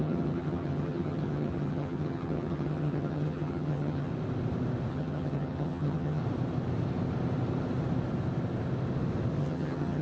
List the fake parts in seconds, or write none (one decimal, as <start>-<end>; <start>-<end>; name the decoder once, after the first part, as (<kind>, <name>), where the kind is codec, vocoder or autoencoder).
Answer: 0.0-4.1 (vocoder, HiFi-GAN); 4.9-6.2; 9.4-10.0